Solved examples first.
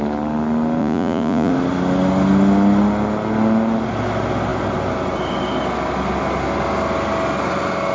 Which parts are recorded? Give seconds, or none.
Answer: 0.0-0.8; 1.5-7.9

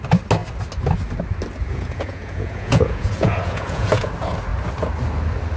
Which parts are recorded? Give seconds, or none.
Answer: 0.0-1.7; 4.1-5.6

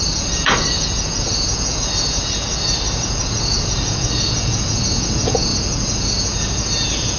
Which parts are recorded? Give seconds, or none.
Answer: none

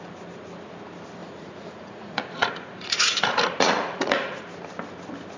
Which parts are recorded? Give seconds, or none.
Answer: 0.0-1.2; 4.4-5.4